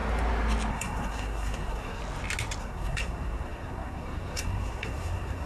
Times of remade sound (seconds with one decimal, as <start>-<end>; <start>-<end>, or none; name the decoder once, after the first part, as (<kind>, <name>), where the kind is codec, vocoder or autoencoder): 0.7-2.0 (codec, SNAC); 2.6-5.5